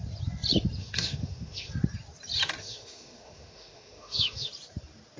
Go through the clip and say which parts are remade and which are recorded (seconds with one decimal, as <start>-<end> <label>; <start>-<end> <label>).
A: 0.0-0.8 recorded; 0.8-1.7 remade; 1.7-2.6 recorded; 2.6-4.5 remade; 4.5-5.2 recorded